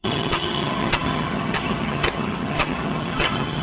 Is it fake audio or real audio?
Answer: fake